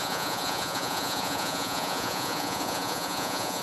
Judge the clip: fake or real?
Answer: fake